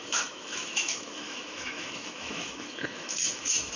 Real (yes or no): no